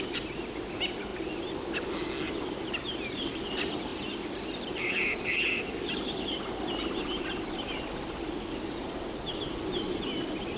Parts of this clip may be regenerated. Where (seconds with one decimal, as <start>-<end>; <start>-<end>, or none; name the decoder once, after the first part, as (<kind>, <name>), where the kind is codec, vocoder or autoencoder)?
none